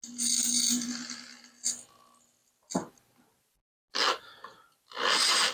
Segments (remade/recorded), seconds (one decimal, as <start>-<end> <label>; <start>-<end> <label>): 0.0-5.5 recorded